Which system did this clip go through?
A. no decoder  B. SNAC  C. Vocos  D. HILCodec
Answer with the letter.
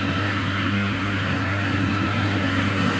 B